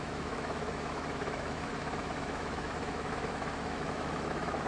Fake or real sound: fake